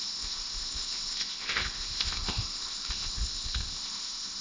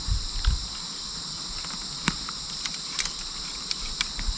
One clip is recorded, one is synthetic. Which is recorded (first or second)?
second